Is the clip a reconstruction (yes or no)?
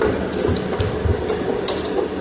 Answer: no